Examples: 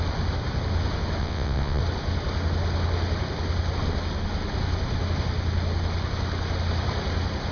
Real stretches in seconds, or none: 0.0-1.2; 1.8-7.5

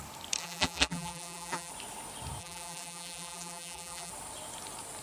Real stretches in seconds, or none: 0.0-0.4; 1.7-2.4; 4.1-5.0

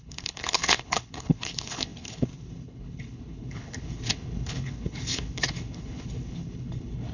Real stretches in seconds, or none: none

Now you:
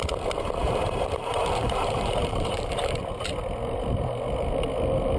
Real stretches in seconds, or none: 0.0-0.6; 3.0-5.2

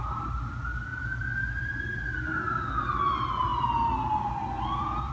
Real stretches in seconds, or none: 0.0-5.1